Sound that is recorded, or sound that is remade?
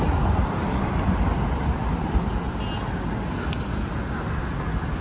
recorded